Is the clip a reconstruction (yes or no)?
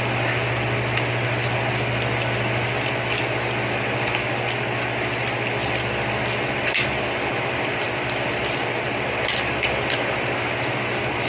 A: yes